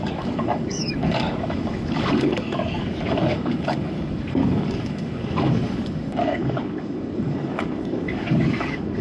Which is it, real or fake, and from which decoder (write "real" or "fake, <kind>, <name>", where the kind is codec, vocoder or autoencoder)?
fake, codec, DAC